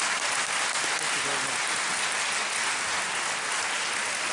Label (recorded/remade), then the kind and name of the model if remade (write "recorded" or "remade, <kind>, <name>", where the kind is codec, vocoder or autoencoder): recorded